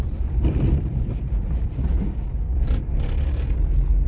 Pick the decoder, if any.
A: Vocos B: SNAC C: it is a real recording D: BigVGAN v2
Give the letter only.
D